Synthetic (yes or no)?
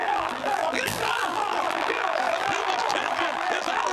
yes